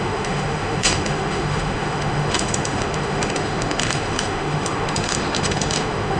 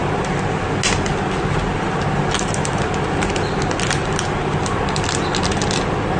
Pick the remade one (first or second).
first